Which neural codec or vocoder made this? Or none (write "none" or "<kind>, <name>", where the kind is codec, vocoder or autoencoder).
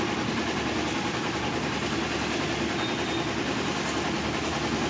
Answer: none